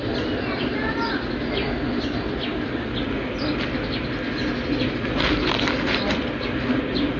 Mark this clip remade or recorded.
recorded